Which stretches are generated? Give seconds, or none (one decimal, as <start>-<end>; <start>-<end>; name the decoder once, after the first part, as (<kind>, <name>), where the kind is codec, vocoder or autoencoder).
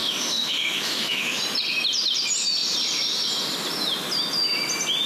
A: 0.0-1.4 (autoencoder, DAC-VAE)